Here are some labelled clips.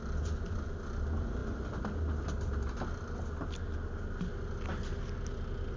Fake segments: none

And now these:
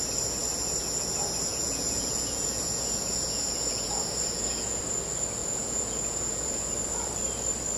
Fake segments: 1.5-4.8 (vocoder, Vocos); 5.4-6.7

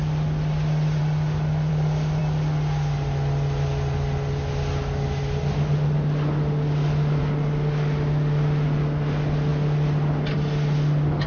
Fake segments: none

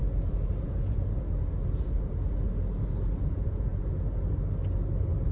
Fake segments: 0.6-1.0 (vocoder, Vocos); 3.2-3.7

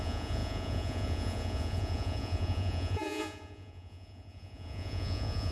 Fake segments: 0.0-5.5 (vocoder, Vocos)